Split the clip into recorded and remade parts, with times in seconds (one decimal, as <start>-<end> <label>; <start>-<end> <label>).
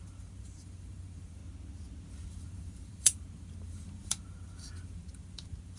0.0-1.4 remade; 1.4-2.3 recorded; 2.3-5.8 remade